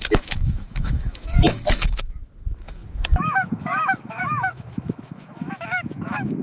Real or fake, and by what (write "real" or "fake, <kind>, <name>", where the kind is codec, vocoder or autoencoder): fake, autoencoder, DAC-VAE